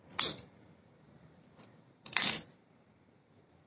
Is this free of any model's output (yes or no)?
no